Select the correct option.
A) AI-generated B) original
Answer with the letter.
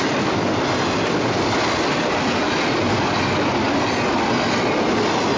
B